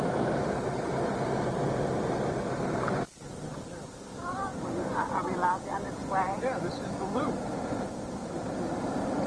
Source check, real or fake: real